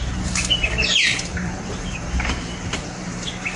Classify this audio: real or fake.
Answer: fake